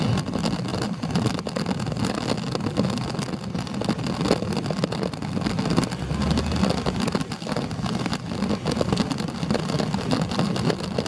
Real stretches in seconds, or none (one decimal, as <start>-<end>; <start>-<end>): 0.0-11.1